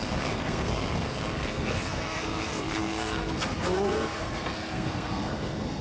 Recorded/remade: remade